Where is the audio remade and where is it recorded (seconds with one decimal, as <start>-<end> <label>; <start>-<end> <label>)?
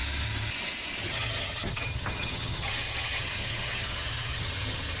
0.0-1.0 recorded; 1.0-5.0 remade